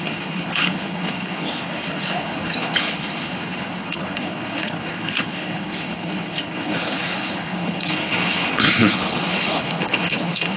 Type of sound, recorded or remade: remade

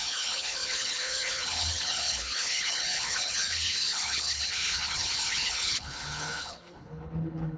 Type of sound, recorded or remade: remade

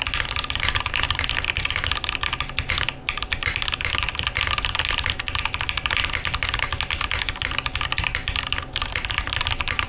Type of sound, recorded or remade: recorded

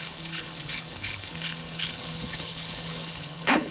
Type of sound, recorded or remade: remade